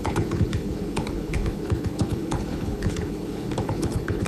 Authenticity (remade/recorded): remade